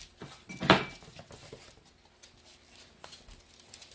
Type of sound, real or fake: real